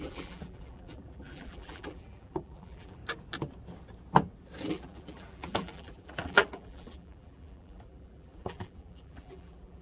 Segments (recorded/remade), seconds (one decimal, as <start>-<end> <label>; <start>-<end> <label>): 0.0-3.0 remade; 3.0-4.7 recorded; 4.7-9.8 remade